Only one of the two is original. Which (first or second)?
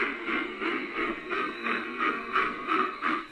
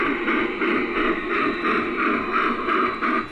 second